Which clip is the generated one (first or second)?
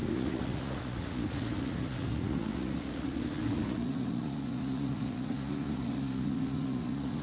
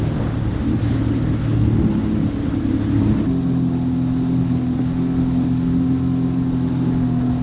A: first